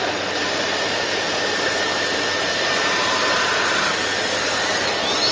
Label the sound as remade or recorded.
remade